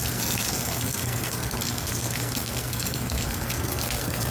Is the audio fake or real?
fake